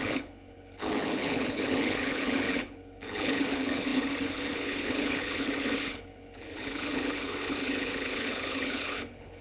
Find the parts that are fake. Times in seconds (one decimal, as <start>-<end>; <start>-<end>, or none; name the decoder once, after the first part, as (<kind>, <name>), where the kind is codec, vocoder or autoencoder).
0.0-9.4 (codec, HILCodec)